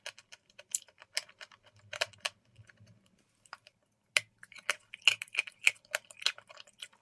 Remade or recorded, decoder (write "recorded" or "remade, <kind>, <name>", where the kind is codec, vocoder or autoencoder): recorded